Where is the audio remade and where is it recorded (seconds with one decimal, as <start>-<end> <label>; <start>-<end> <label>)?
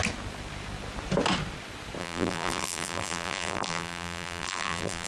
0.0-2.0 recorded; 2.0-5.1 remade